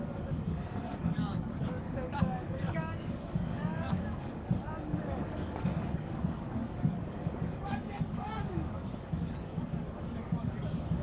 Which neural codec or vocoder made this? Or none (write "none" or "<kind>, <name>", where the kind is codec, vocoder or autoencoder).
codec, DAC